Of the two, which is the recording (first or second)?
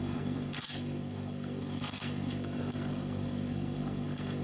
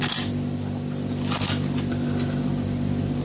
second